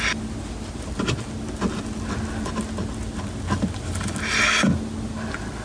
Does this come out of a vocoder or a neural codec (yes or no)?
no